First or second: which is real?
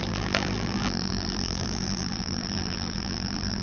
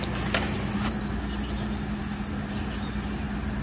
second